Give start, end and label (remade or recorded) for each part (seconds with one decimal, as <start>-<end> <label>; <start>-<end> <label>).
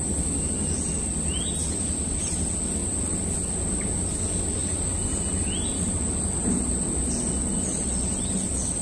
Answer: 0.0-8.8 recorded